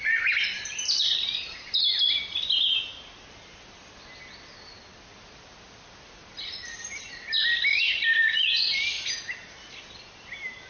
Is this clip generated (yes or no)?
no